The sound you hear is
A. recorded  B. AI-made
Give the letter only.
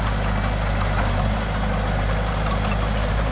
A